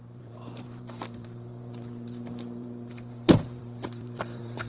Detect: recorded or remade remade